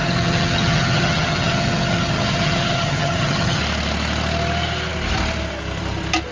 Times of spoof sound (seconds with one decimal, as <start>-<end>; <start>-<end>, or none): 0.0-3.6